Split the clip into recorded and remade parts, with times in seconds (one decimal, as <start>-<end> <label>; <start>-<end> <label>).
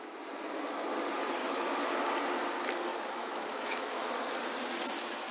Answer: 0.0-1.4 recorded; 1.4-1.9 remade; 1.9-2.9 recorded; 2.9-4.1 remade; 4.1-5.3 recorded